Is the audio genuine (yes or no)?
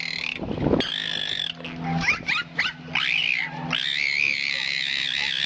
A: yes